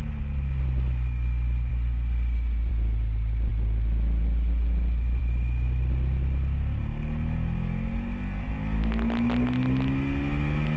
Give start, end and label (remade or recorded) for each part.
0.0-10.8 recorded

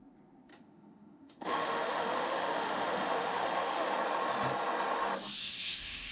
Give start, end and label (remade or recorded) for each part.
0.0-0.5 recorded; 0.5-3.9 remade; 3.9-5.4 recorded; 5.4-6.1 remade

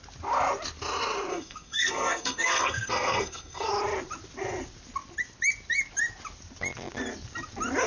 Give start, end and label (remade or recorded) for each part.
0.0-1.3 recorded; 1.3-3.7 remade; 3.7-7.9 recorded

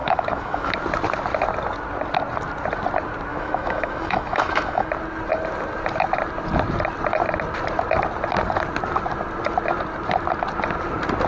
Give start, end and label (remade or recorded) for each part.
0.0-0.7 remade; 0.7-3.3 recorded; 3.3-4.9 remade; 4.9-11.3 recorded

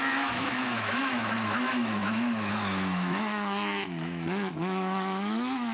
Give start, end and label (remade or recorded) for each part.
0.0-5.7 remade

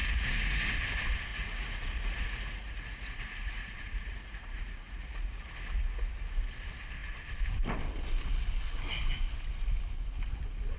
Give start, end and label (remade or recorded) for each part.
0.0-0.8 remade; 0.8-1.3 recorded; 1.3-5.4 remade; 5.4-10.8 recorded

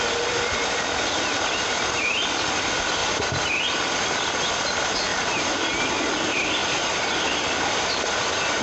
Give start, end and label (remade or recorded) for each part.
0.0-3.0 recorded; 3.0-3.5 remade; 3.5-5.1 recorded; 5.1-5.9 remade; 5.9-6.6 recorded; 6.6-8.6 remade

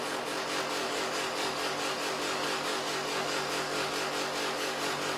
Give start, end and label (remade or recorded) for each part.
0.0-0.8 recorded; 0.8-3.9 remade; 3.9-4.4 recorded; 4.4-5.2 remade